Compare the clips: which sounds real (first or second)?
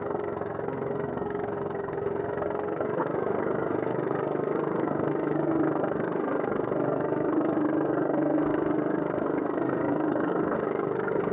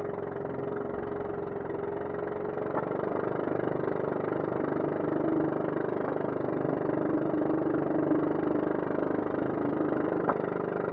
second